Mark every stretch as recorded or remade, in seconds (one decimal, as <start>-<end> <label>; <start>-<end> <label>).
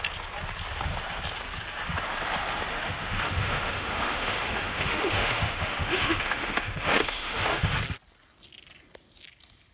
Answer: 0.0-2.7 recorded; 2.7-7.8 remade; 7.8-9.7 recorded